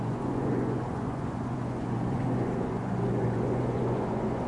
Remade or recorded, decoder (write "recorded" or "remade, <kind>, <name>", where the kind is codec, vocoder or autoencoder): remade, vocoder, Vocos